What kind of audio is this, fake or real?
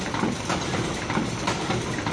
real